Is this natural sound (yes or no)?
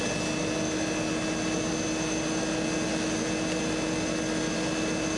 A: yes